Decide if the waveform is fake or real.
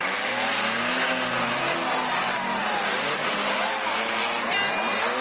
real